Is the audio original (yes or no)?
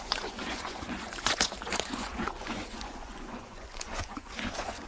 no